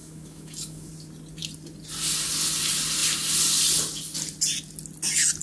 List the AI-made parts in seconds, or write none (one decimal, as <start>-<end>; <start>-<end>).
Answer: 0.0-0.9